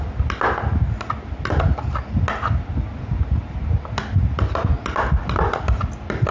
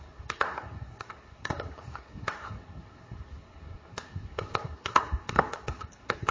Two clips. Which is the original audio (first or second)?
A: first